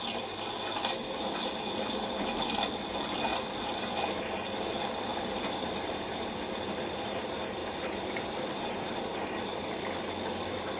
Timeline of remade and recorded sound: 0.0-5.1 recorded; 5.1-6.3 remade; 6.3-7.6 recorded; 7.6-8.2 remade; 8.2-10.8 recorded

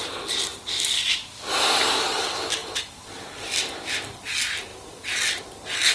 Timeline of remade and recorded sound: 0.0-0.5 recorded; 0.5-2.2 remade; 2.2-2.6 recorded; 2.6-4.3 remade; 4.3-4.7 recorded; 4.7-5.4 remade; 5.4-5.9 recorded

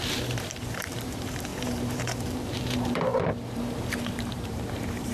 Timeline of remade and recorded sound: 0.0-5.1 remade

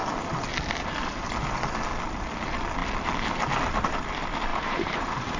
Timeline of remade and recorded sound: 0.0-4.5 recorded; 4.5-5.4 remade

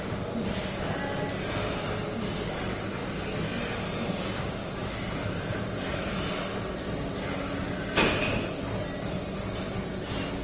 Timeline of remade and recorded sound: 0.0-4.6 recorded; 4.6-6.1 remade; 6.1-10.4 recorded

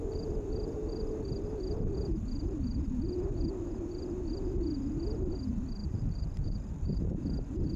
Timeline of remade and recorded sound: 0.0-5.8 recorded; 5.8-7.0 remade; 7.0-7.8 recorded